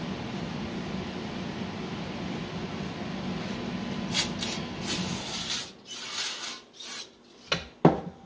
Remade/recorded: recorded